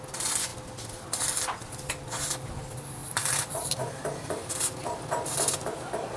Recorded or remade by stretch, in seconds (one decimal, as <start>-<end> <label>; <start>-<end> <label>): 0.0-3.0 recorded; 3.0-4.5 remade; 4.5-6.2 recorded